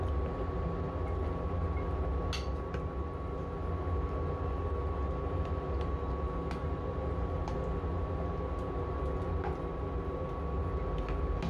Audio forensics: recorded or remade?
recorded